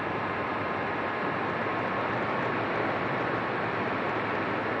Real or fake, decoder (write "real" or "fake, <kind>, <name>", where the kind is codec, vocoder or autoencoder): real